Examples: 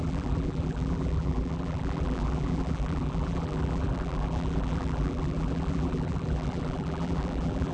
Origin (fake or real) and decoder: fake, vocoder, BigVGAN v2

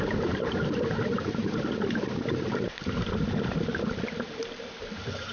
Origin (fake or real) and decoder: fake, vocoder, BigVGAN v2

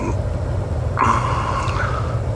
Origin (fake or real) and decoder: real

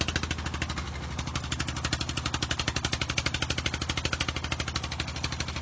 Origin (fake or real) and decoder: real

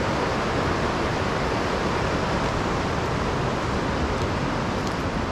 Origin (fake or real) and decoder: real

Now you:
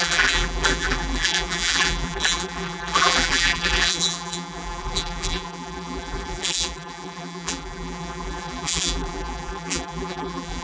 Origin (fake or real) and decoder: fake, vocoder, BigVGAN v2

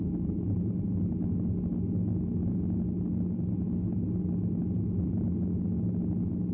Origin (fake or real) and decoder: real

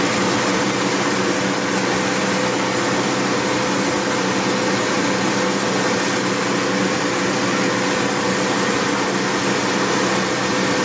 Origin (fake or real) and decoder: real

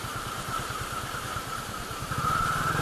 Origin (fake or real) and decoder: fake, vocoder, BigVGAN v2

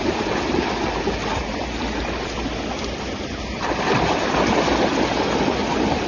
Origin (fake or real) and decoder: real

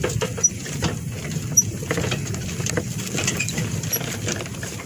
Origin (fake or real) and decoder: fake, vocoder, BigVGAN v2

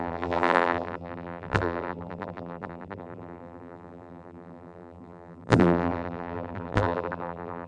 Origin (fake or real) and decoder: fake, vocoder, BigVGAN v2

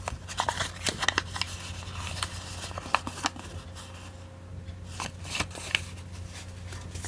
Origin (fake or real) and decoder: real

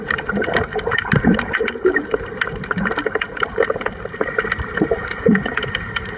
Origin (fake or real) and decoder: fake, vocoder, BigVGAN v2